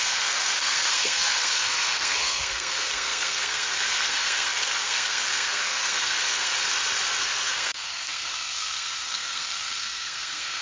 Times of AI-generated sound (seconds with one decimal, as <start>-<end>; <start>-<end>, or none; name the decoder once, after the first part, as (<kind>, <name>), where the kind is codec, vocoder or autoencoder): 0.0-6.5 (codec, SNAC); 7.2-10.6